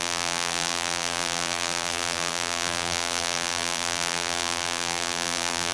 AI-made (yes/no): yes